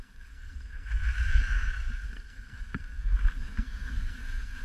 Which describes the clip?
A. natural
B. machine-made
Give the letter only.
B